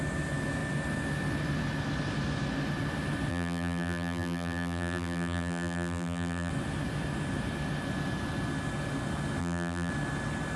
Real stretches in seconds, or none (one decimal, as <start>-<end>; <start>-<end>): 0.0-3.3; 6.5-9.4; 9.9-10.6